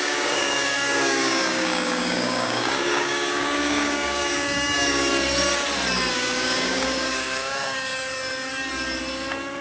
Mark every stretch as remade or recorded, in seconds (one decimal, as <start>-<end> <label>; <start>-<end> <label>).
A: 0.0-5.1 remade; 5.1-6.1 recorded; 6.1-7.9 remade; 7.9-9.6 recorded